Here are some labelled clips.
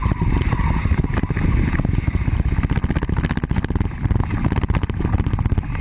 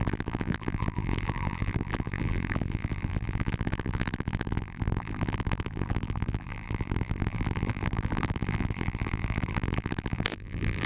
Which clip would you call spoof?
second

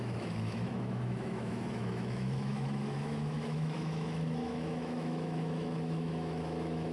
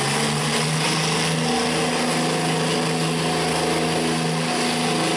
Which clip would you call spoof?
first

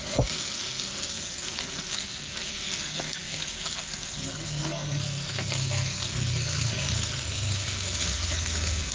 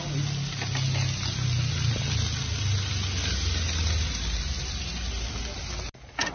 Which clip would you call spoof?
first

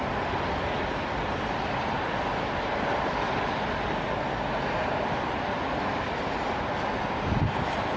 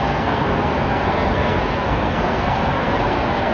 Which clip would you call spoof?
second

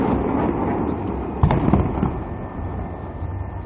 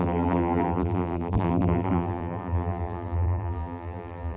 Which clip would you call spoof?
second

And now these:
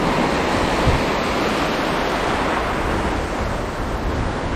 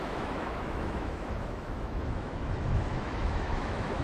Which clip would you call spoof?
second